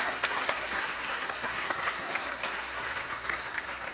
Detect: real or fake fake